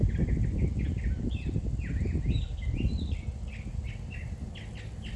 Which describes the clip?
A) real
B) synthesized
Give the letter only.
A